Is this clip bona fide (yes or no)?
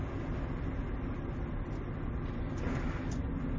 yes